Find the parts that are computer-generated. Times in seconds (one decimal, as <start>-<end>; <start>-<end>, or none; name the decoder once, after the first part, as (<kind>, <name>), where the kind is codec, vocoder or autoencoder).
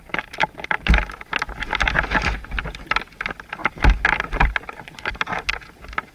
3.6-4.4 (vocoder, BigVGAN v2)